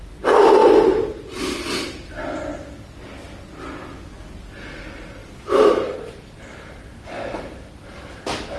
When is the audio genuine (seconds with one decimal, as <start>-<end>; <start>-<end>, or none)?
0.0-0.6; 1.8-5.2; 6.3-8.6